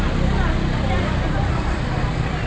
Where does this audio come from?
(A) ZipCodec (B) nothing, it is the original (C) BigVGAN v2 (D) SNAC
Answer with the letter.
B